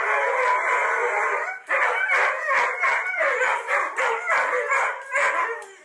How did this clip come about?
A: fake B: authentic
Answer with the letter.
B